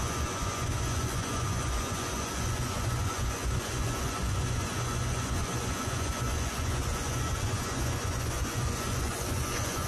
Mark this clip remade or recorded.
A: remade